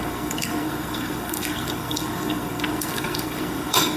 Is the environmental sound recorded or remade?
remade